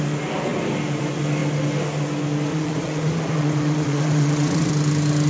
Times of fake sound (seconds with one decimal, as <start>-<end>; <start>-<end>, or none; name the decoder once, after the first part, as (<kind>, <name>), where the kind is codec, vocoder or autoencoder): 2.5-4.7 (vocoder, Vocos)